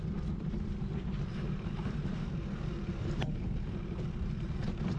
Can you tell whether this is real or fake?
fake